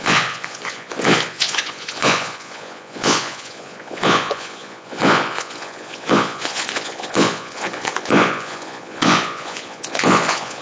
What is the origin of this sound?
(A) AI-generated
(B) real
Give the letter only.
A